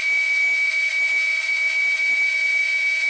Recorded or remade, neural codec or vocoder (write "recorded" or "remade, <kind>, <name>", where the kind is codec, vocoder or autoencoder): recorded